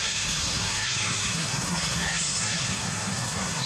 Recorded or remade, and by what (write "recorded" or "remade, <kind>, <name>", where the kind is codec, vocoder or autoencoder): remade, codec, SNAC